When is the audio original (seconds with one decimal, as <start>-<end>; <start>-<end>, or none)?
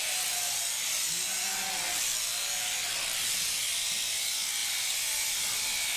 0.0-6.0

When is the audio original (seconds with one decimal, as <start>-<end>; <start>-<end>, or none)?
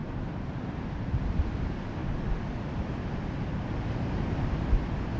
0.0-0.6; 2.0-3.9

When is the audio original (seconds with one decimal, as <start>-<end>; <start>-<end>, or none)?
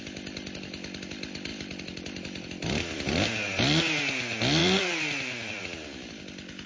0.0-1.5; 3.6-4.6; 5.6-6.7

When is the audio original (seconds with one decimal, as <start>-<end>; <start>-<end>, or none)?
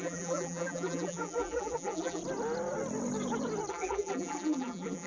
2.2-3.7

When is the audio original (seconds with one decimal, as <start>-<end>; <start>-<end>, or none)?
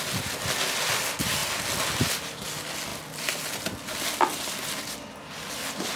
0.0-6.0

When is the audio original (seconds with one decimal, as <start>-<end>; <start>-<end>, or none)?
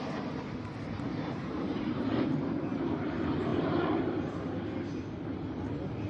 0.0-1.1; 2.5-6.1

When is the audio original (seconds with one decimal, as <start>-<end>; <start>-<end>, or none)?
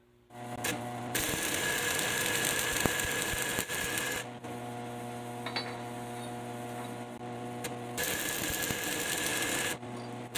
0.0-10.4